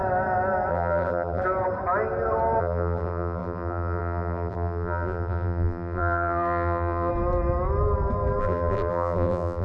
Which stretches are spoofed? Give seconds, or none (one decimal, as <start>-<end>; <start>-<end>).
0.7-1.4; 2.6-7.1; 8.4-9.6